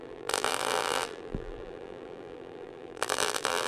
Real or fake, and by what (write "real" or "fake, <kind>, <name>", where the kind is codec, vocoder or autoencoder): fake, vocoder, BigVGAN v2